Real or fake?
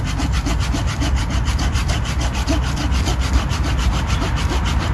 real